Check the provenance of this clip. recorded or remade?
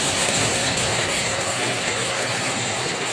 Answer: remade